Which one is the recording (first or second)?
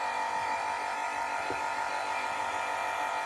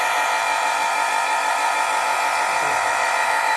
first